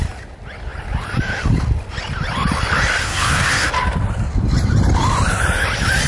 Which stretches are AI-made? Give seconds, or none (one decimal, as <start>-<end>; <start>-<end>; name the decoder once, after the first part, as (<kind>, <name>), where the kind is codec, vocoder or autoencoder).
3.0-3.7 (codec, SNAC)